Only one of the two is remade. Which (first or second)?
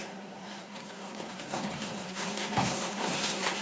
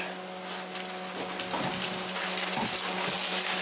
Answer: first